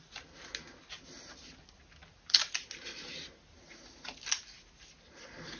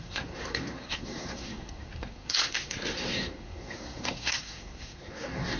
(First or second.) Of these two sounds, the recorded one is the first